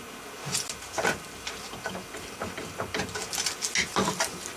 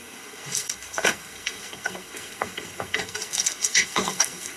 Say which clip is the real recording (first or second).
first